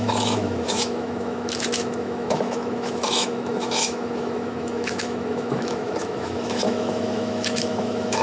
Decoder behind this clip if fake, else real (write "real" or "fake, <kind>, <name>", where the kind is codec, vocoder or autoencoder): fake, autoencoder, DAC-VAE